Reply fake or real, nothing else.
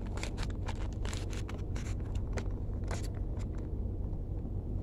fake